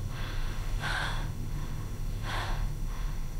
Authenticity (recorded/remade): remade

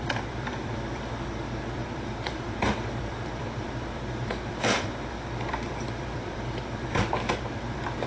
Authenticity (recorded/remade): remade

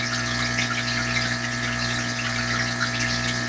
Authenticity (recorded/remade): recorded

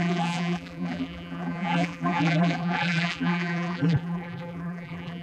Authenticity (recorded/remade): remade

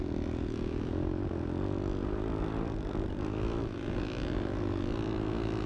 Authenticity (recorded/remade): recorded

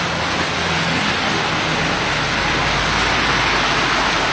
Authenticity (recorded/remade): recorded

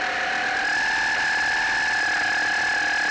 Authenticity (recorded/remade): recorded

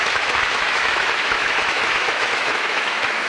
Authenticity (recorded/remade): remade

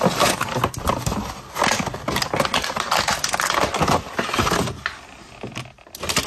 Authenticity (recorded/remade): recorded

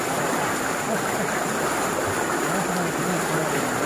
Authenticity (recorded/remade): recorded